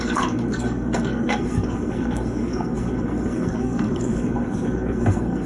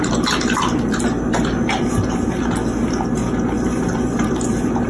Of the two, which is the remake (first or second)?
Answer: first